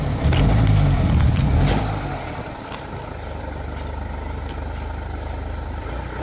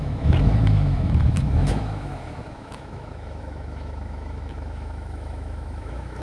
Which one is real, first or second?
first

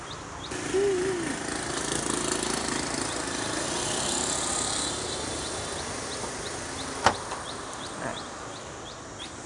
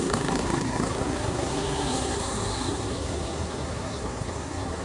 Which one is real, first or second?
first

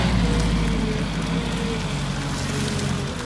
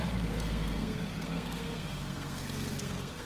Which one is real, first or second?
first